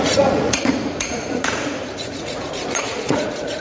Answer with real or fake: fake